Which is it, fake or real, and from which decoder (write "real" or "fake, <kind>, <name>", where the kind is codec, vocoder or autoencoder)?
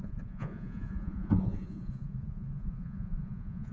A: fake, vocoder, Vocos